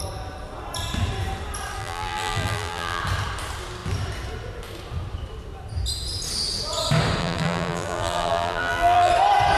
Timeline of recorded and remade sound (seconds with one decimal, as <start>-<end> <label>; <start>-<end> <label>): 0.0-1.8 recorded; 1.8-3.0 remade; 3.0-7.2 recorded; 7.2-9.1 remade; 9.1-9.6 recorded